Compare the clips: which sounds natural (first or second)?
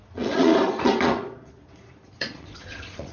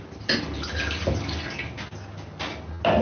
second